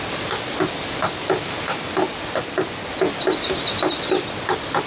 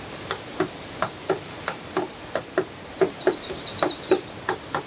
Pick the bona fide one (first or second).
first